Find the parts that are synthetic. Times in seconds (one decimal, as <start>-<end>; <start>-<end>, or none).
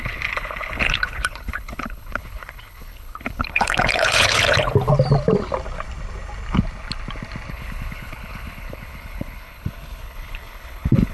0.0-4.9; 7.5-11.1